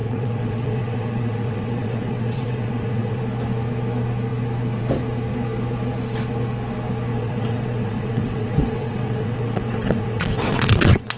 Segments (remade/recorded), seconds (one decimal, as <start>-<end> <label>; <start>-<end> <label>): 0.0-3.2 remade; 3.2-7.1 recorded; 7.1-11.2 remade